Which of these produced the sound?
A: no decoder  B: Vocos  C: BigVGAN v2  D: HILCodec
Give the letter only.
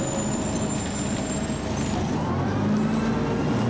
A